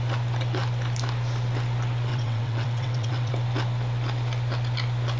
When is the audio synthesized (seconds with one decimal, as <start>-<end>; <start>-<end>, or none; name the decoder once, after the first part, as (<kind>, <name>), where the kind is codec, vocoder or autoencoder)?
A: 2.1-3.3 (vocoder, WaveNeXt)